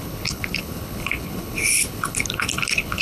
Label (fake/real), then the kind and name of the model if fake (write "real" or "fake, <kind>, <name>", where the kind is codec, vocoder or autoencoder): fake, codec, HILCodec